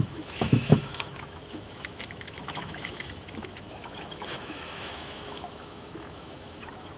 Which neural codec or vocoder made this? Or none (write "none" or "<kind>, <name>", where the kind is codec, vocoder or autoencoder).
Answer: autoencoder, DAC-VAE